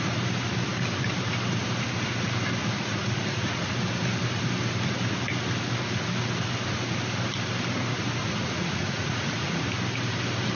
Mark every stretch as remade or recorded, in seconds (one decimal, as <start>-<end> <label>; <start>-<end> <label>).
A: 0.0-2.6 recorded; 2.6-3.6 remade; 3.6-8.2 recorded; 8.2-9.6 remade; 9.6-10.5 recorded